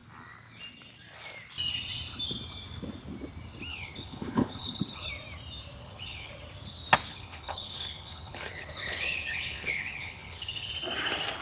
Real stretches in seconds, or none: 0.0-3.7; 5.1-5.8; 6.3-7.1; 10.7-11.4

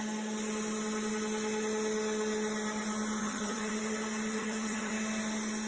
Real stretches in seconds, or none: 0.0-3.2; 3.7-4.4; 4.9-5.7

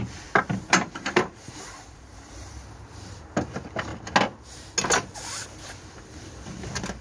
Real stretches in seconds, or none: 3.9-7.0